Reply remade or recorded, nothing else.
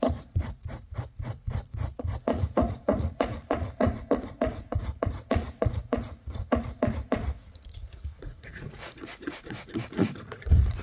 remade